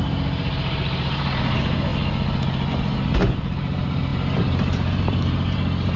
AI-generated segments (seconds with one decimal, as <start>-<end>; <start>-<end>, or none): 0.0-1.9; 2.7-6.0